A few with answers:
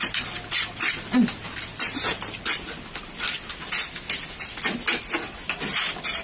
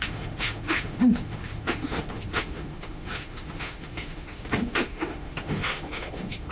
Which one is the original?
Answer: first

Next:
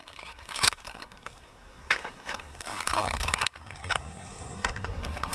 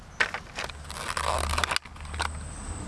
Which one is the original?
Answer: second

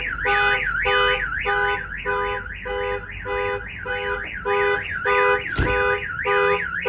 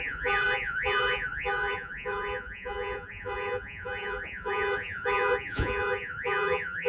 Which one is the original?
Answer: first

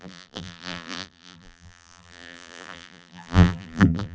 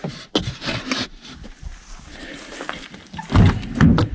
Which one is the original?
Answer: second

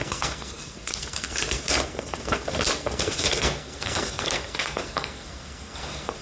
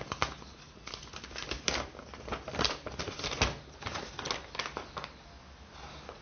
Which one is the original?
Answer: second